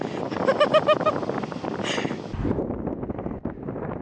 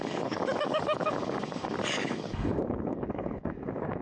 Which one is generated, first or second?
second